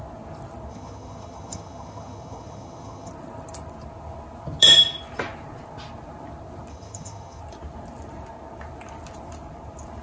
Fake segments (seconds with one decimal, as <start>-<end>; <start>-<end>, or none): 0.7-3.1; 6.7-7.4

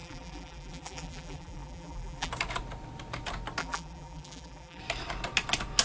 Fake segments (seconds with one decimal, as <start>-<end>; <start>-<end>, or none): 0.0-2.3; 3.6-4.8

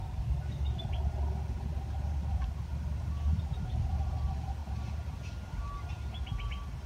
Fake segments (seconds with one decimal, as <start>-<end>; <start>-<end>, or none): 0.0-0.9

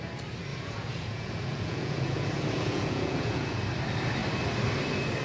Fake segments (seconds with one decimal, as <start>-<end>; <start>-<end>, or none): 0.5-3.6

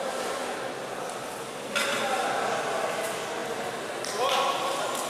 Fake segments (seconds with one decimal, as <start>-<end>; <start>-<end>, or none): 0.0-0.4; 2.9-5.1

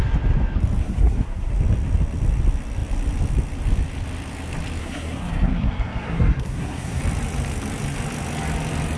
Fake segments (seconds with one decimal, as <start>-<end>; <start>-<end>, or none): 0.8-1.5; 4.8-7.0